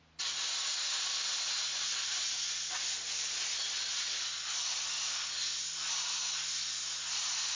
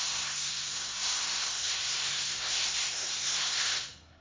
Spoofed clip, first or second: second